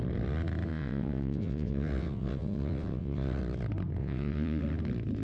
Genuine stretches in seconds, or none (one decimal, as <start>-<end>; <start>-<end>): 0.0-0.7; 3.4-4.0; 4.6-5.2